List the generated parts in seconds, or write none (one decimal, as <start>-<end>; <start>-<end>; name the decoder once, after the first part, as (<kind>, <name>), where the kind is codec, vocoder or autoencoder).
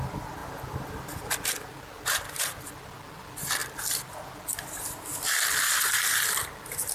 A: none